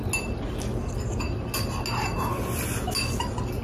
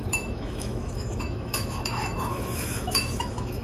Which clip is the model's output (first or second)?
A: second